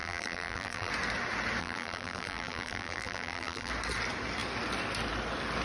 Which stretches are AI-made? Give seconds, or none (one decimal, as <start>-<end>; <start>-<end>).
0.0-0.9; 1.6-3.7